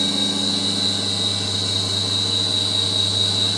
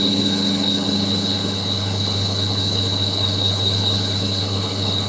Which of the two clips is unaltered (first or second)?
first